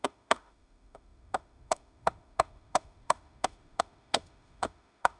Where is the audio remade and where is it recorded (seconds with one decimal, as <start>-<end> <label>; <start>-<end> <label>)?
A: 0.0-5.2 remade